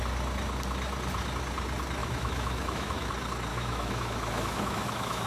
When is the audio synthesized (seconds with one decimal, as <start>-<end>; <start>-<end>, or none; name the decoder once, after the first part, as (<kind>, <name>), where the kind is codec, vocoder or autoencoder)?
2.0-3.1 (autoencoder, DAC-VAE); 3.5-5.3